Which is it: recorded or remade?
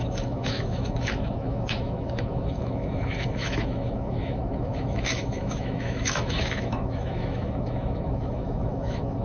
remade